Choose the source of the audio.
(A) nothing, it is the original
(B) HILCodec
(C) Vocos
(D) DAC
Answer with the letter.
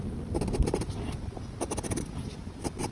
A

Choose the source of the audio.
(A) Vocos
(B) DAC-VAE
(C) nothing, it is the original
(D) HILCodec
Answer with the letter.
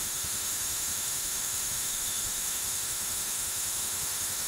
B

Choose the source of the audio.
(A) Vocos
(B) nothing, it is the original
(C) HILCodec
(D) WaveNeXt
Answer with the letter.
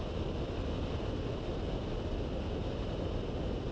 B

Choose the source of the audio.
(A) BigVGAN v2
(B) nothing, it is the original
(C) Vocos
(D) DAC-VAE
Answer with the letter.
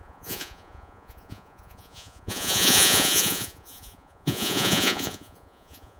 C